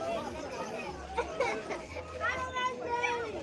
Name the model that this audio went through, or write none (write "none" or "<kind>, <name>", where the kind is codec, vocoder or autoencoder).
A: none